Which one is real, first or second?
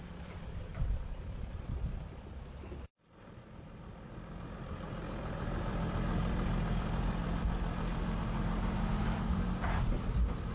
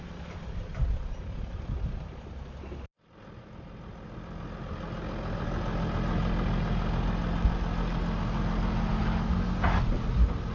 second